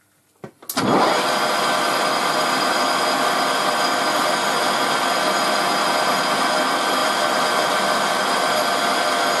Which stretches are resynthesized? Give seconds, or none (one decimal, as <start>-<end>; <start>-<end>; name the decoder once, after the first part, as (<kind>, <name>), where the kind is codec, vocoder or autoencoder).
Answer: 7.0-8.5 (vocoder, BigVGAN v2)